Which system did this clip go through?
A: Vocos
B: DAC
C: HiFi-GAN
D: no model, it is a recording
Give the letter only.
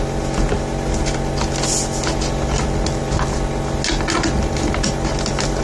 D